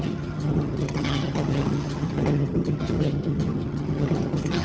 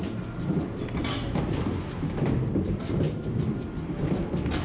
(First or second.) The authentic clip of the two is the second